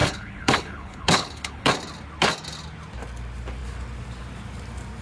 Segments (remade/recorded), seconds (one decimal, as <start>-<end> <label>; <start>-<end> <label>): 0.0-1.7 remade; 1.7-5.0 recorded